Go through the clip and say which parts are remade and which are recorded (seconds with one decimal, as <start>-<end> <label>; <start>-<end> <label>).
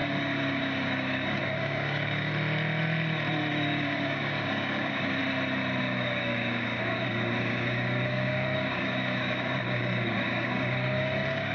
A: 0.0-2.3 remade; 2.3-3.5 recorded; 3.5-5.2 remade; 5.2-5.8 recorded; 5.8-11.5 remade